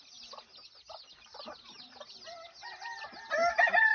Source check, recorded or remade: recorded